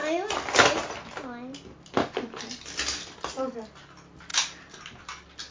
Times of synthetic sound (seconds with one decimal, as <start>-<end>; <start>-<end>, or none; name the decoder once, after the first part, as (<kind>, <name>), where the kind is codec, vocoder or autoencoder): none